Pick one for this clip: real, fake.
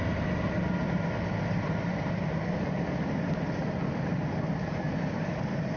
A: real